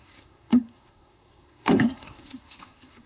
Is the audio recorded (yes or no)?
no